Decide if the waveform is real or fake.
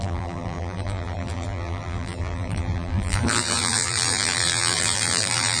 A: fake